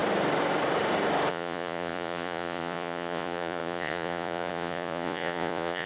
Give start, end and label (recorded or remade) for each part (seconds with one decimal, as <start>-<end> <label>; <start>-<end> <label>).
0.0-1.3 recorded; 1.3-5.9 remade

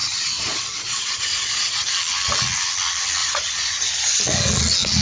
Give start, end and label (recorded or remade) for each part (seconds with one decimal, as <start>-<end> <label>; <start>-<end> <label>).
0.0-1.9 remade; 1.9-3.2 recorded; 3.2-4.2 remade; 4.2-5.0 recorded

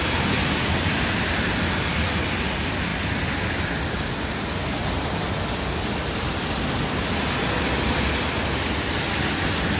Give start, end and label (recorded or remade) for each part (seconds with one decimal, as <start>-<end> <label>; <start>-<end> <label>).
0.0-9.8 recorded

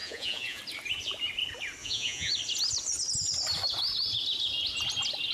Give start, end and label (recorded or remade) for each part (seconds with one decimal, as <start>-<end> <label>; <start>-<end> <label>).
0.0-0.6 remade; 0.6-1.8 recorded; 1.8-2.3 remade; 2.3-5.3 recorded

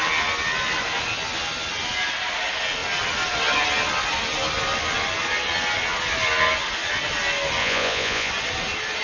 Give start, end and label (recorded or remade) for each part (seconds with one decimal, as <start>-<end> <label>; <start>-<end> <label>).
0.0-7.6 recorded; 7.6-8.3 remade; 8.3-9.0 recorded

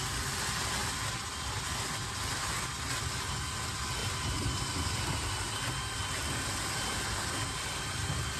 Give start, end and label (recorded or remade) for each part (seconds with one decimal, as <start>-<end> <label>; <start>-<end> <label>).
0.0-8.4 recorded

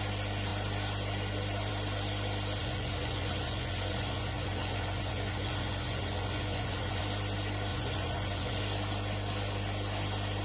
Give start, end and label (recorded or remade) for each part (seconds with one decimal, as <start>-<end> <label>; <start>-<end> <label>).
0.0-2.6 recorded; 2.6-7.0 remade; 7.0-7.7 recorded; 7.7-8.6 remade; 8.6-10.4 recorded